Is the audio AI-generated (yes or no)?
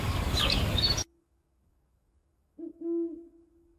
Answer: yes